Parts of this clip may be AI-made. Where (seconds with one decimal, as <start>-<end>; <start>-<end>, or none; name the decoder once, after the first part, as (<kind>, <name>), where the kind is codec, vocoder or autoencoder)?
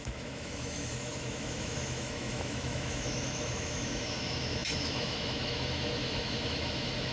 0.0-7.1 (autoencoder, DAC-VAE)